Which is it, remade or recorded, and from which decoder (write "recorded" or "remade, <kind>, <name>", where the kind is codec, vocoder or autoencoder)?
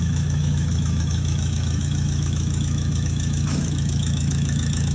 remade, autoencoder, DAC-VAE